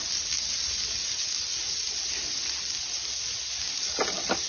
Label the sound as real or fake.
real